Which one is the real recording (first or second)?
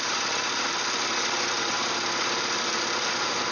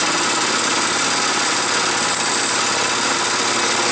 second